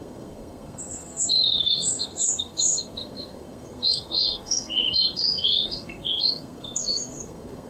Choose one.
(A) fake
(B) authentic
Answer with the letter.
A